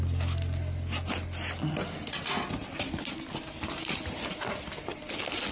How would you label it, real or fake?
real